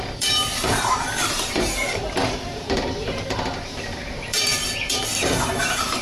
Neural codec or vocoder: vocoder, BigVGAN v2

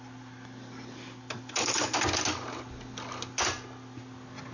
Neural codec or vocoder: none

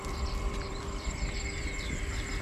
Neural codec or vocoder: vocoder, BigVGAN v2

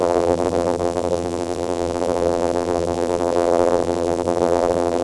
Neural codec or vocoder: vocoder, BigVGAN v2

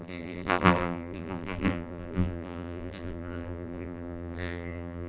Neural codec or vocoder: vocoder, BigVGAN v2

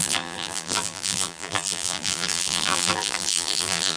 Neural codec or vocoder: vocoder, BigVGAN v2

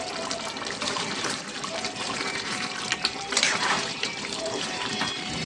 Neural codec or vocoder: vocoder, BigVGAN v2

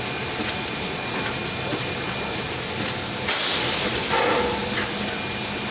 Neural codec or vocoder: none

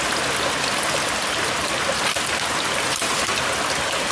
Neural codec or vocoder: none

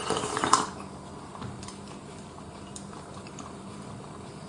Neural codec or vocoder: vocoder, BigVGAN v2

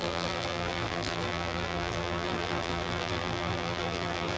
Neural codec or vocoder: vocoder, BigVGAN v2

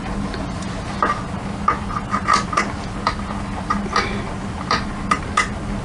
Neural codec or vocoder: none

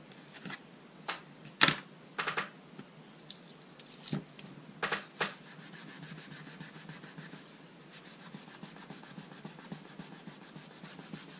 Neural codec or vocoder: none